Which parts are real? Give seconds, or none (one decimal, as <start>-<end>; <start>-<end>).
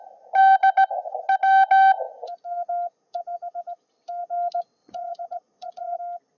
0.0-4.8; 6.0-6.4